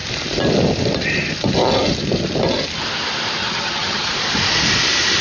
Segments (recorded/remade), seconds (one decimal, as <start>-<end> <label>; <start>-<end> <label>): 0.0-3.4 recorded; 3.4-4.1 remade; 4.1-5.2 recorded